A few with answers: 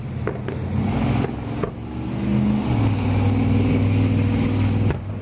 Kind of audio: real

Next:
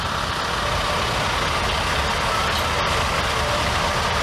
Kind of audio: real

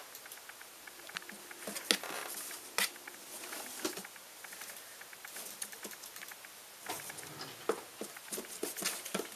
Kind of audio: real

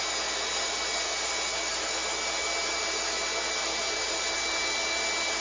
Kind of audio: real